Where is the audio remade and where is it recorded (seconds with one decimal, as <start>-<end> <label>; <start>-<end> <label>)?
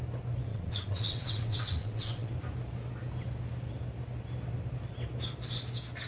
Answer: 0.0-0.5 recorded; 0.5-2.3 remade; 2.3-6.1 recorded